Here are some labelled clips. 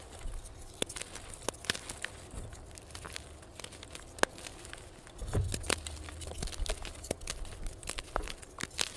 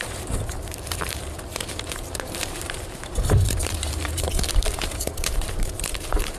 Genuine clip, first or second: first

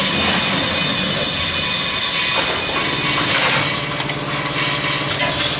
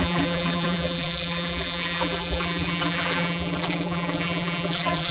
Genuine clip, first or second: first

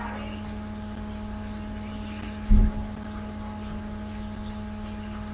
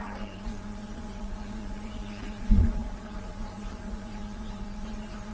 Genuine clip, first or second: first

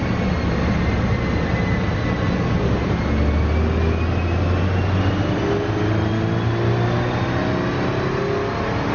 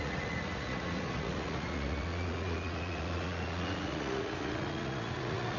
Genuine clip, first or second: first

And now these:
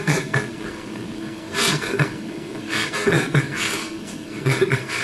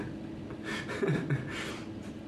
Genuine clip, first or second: second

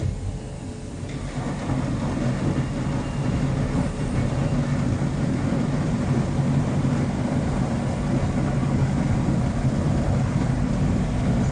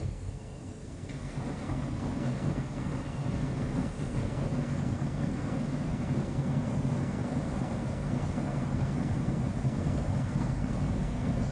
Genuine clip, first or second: first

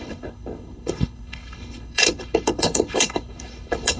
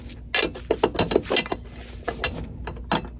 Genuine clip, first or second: second